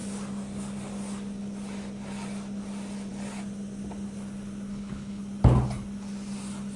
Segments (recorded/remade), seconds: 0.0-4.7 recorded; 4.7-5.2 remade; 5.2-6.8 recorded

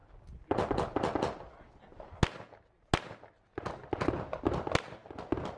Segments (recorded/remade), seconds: 0.0-5.6 recorded

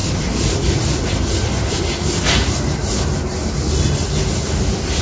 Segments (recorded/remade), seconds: 0.0-1.8 remade; 1.8-5.0 recorded

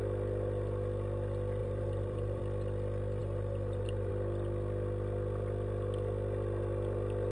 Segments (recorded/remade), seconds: 0.0-1.6 recorded; 1.6-2.4 remade; 2.4-3.2 recorded; 3.2-4.1 remade; 4.1-7.3 recorded

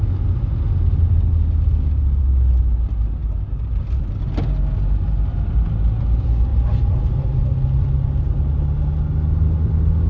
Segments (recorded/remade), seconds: 0.0-6.5 recorded; 6.5-7.4 remade; 7.4-10.1 recorded

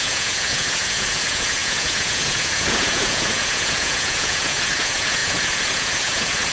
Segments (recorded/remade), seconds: 0.0-6.5 remade